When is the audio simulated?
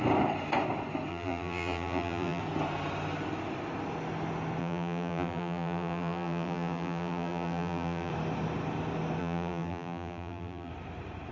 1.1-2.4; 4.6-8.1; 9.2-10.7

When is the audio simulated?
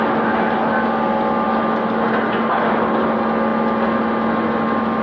none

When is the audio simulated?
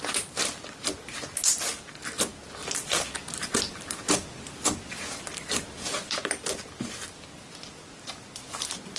none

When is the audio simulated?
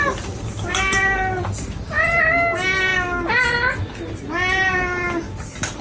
none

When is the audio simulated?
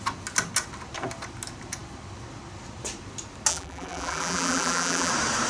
3.5-5.1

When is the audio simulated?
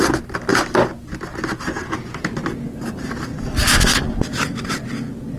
none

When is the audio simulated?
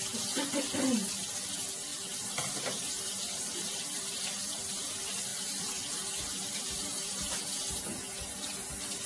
1.9-4.2; 5.3-5.8; 6.4-7.4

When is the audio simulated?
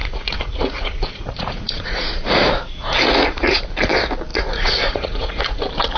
0.0-3.6; 4.3-5.6